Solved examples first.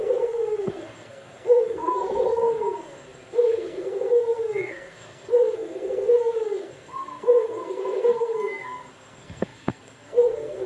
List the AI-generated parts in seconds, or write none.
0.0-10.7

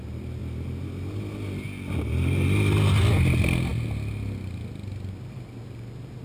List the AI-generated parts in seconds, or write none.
none

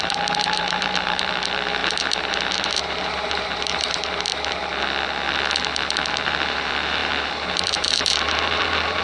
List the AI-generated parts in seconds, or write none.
0.0-4.3; 6.1-9.0

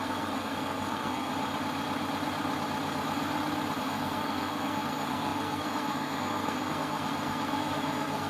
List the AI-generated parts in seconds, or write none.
0.0-1.3; 3.8-8.3